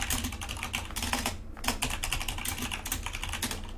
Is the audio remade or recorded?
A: recorded